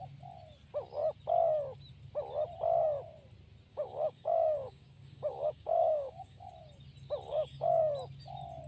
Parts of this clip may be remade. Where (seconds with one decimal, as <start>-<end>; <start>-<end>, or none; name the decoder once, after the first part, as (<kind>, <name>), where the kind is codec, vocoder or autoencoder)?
3.7-6.5 (codec, DAC); 7.3-7.8